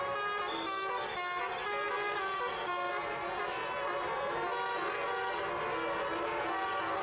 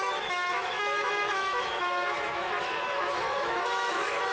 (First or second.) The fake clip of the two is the second